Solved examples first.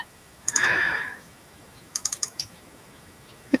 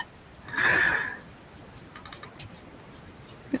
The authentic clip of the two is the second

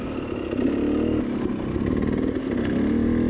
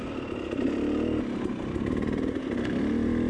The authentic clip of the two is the first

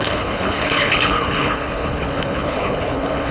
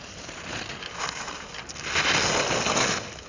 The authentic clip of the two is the second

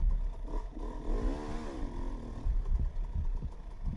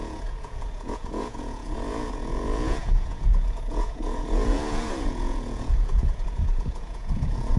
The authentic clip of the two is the first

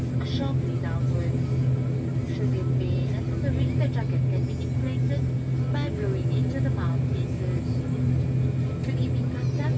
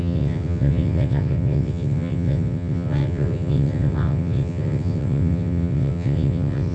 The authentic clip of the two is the first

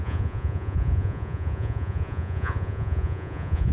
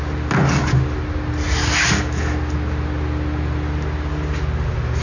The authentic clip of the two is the second